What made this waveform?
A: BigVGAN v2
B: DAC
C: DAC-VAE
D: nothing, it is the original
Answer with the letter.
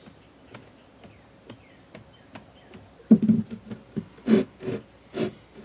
D